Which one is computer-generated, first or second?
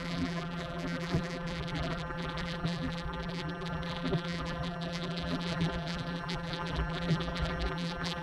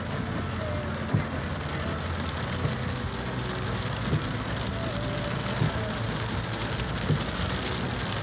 first